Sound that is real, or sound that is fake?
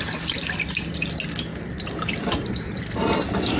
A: real